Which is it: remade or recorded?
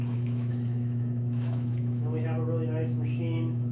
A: remade